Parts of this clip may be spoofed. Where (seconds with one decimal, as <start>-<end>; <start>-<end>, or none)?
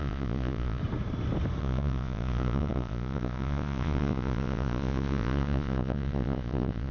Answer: 0.0-0.8; 1.6-6.9